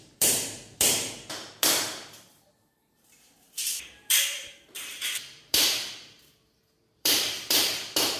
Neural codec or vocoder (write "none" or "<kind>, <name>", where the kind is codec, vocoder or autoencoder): vocoder, BigVGAN v2